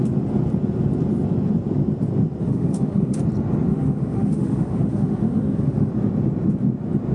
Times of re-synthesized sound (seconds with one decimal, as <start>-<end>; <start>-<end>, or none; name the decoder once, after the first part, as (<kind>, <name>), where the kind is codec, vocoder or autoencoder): 2.4-3.2 (autoencoder, DAC-VAE); 3.7-5.9